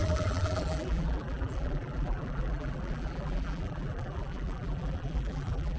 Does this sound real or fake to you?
fake